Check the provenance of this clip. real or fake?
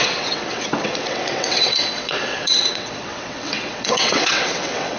fake